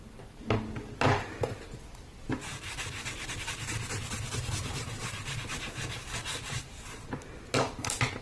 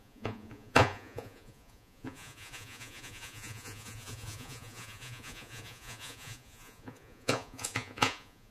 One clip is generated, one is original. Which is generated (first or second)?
second